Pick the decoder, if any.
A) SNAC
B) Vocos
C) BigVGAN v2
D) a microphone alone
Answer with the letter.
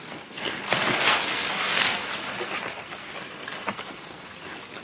A